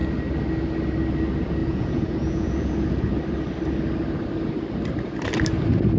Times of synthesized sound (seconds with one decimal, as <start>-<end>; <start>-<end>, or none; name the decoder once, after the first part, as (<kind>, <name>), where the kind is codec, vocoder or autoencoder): 1.6-3.1 (vocoder, Vocos)